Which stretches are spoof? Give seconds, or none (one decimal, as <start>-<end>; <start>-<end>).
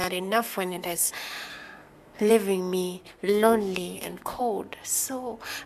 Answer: 0.0-1.1; 1.5-2.3; 3.0-4.4